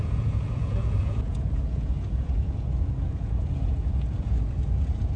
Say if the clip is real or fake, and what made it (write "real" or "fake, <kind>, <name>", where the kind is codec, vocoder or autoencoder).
fake, vocoder, Vocos